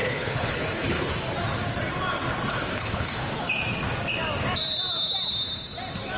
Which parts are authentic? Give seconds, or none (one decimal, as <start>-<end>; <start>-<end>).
1.1-2.5; 3.3-6.2